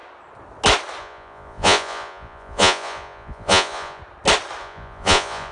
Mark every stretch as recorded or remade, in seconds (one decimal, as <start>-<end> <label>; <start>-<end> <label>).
0.0-1.0 recorded; 1.0-4.0 remade; 4.0-4.6 recorded; 4.6-5.5 remade